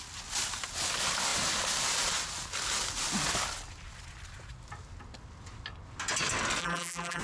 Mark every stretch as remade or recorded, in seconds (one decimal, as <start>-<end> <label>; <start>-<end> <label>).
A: 0.0-6.6 recorded; 6.6-7.2 remade